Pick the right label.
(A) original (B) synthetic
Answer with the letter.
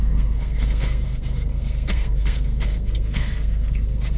B